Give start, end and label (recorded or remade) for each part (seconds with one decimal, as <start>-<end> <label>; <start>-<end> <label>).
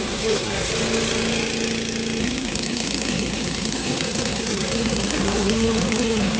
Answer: 0.0-0.7 remade; 0.7-2.2 recorded; 2.2-6.4 remade